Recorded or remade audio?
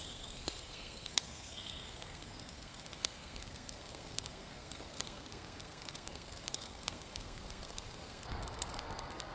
remade